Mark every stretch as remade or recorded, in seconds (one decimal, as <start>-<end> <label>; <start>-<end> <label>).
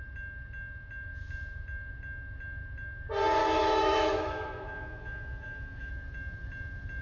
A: 0.0-3.4 recorded; 3.4-5.9 remade; 5.9-7.0 recorded